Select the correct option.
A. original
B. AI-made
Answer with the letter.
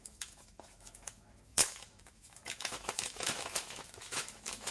B